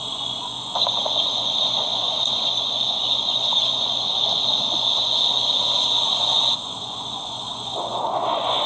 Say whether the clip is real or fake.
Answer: fake